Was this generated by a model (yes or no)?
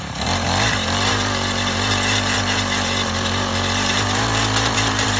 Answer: yes